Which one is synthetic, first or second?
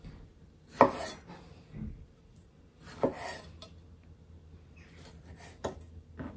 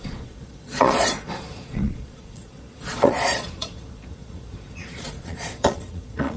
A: second